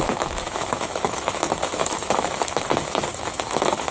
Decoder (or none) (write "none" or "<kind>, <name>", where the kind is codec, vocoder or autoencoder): autoencoder, DAC-VAE